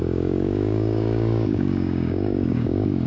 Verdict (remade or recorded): remade